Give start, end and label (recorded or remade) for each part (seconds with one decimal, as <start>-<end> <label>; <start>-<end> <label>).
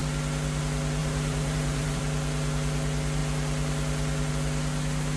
0.0-1.0 recorded; 1.0-2.0 remade; 2.0-5.2 recorded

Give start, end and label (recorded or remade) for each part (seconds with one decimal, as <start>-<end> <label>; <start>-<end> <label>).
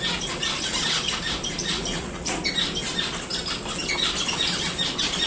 0.0-1.6 recorded; 1.6-2.4 remade; 2.4-5.3 recorded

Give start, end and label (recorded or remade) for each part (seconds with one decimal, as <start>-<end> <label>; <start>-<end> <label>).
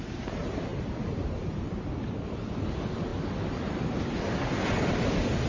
0.0-5.5 recorded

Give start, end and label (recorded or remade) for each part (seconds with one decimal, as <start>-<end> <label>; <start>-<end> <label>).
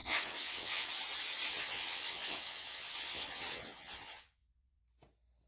0.0-0.9 remade; 0.9-1.5 recorded; 1.5-4.8 remade; 4.8-5.5 recorded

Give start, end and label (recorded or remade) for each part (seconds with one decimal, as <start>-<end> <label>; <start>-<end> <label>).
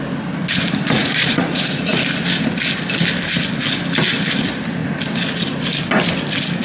0.0-1.0 recorded; 1.0-2.0 remade; 2.0-6.6 recorded